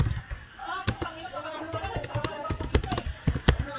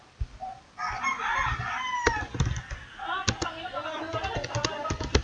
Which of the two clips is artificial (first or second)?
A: first